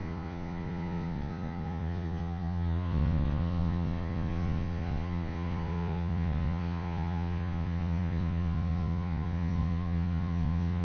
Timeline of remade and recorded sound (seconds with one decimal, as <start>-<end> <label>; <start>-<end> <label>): 0.0-10.8 remade